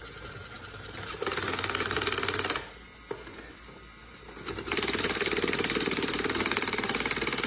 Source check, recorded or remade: recorded